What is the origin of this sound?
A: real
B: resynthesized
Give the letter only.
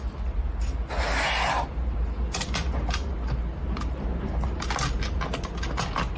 A